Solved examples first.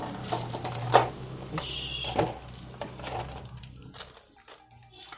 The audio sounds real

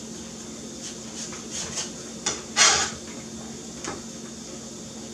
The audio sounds real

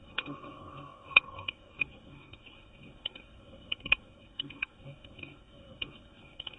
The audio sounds fake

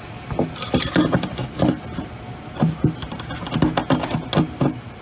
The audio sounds real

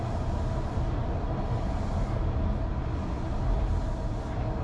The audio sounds real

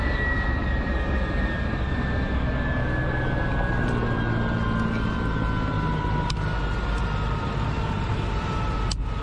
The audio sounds real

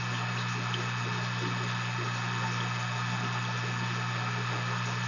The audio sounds real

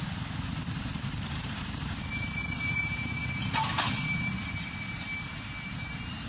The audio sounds fake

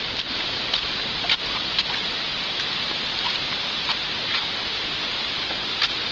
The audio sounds real